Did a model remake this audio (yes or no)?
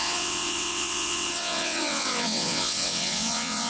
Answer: yes